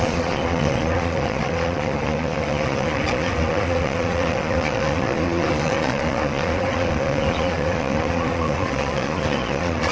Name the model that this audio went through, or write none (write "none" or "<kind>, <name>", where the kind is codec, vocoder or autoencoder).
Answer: vocoder, Vocos